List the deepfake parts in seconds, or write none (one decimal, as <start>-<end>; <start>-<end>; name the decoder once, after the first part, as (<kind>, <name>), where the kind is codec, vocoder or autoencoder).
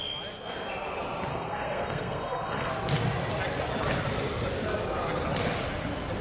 1.3-2.7 (codec, SNAC)